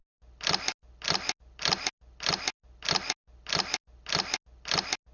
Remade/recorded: recorded